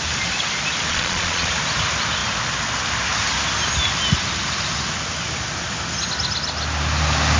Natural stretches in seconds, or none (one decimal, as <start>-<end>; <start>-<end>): 0.0-0.9; 1.5-7.4